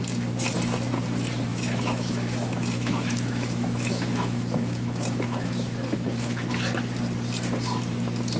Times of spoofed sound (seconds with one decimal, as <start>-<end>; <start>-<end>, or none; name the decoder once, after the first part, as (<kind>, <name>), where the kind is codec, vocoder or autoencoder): 1.5-6.5 (autoencoder, DAC-VAE)